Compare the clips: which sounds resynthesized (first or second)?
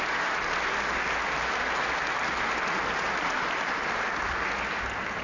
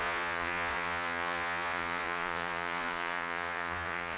second